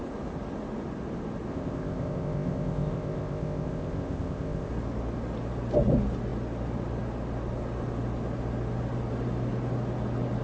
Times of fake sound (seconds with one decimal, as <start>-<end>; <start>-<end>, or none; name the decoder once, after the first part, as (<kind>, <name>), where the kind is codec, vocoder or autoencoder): 1.5-4.7 (codec, ZipCodec)

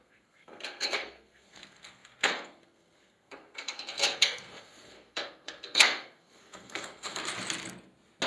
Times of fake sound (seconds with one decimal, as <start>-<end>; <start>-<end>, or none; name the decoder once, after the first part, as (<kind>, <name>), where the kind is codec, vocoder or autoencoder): 0.0-7.2 (codec, SNAC)

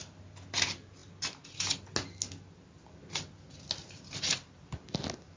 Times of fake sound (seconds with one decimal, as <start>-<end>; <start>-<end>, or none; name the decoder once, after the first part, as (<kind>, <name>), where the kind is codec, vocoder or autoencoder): none

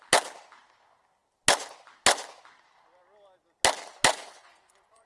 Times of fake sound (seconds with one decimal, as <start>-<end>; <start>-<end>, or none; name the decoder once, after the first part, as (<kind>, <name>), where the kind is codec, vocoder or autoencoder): 4.1-5.1 (vocoder, Vocos)